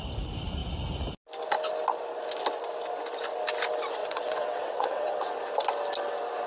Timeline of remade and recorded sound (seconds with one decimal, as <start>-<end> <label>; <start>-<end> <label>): 0.0-4.0 recorded; 4.0-5.3 remade; 5.3-6.5 recorded